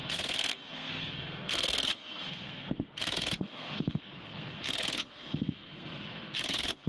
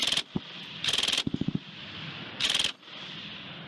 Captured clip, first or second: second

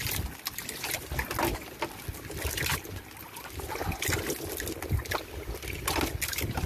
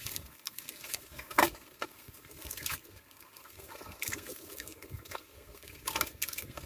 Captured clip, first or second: first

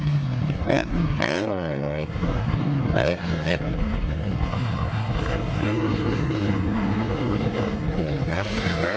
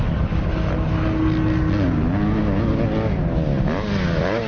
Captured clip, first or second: second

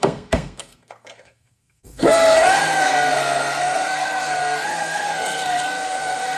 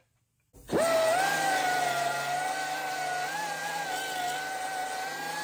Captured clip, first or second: second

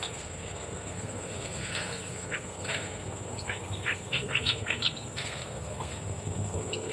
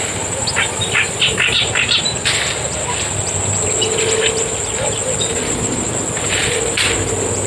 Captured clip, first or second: second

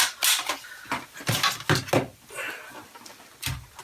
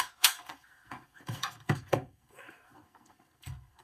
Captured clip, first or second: first